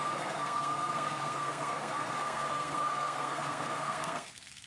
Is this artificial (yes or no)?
yes